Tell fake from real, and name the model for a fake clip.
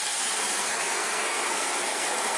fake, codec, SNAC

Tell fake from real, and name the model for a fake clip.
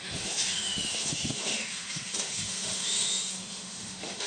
fake, autoencoder, DAC-VAE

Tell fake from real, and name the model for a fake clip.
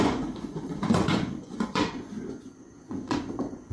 fake, vocoder, Vocos